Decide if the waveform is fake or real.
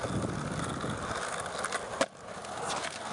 real